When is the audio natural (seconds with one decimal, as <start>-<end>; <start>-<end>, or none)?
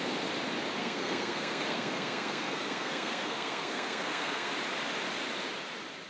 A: 0.0-0.8; 4.5-6.1